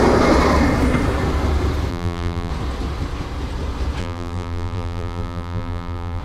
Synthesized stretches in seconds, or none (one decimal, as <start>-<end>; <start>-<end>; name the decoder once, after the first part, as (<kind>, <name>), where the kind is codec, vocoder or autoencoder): 1.9-2.5 (vocoder, BigVGAN v2); 4.0-6.2